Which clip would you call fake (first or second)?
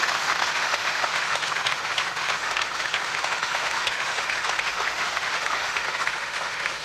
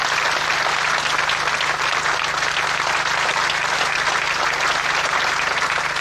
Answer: first